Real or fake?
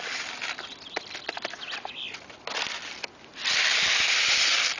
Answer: real